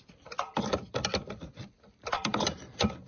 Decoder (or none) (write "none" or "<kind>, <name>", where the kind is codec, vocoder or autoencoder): vocoder, BigVGAN v2